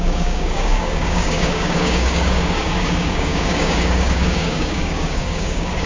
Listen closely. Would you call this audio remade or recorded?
remade